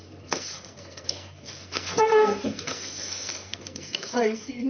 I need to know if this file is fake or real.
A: fake